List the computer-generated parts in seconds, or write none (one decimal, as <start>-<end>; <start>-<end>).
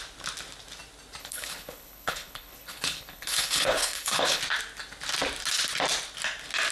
1.2-4.4